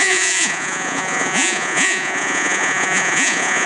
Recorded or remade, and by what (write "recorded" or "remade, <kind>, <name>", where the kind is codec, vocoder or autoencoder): remade, vocoder, Vocos